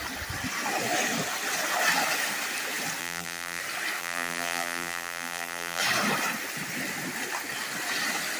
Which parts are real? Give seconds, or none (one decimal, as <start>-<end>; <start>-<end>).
0.0-3.0; 3.6-4.0; 5.8-8.4